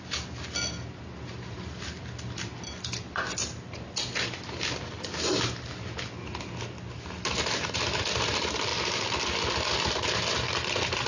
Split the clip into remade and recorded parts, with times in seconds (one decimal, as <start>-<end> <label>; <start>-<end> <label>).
0.0-11.1 recorded